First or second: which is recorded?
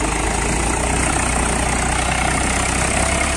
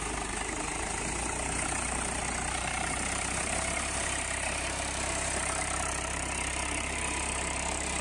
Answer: first